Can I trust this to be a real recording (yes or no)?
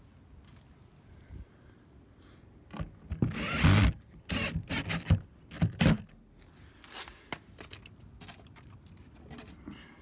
yes